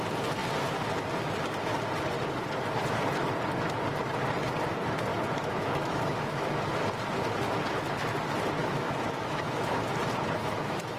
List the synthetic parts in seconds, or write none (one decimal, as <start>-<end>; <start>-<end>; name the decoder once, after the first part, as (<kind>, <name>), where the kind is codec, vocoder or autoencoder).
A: 5.1-6.7 (autoencoder, DAC-VAE); 8.6-9.8; 10.4-11.0